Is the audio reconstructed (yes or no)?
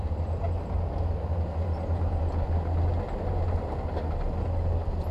no